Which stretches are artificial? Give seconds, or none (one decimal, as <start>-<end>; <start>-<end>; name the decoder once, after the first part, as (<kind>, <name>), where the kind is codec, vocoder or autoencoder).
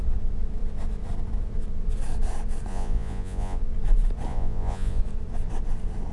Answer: 2.7-3.6 (vocoder, Vocos); 4.3-5.0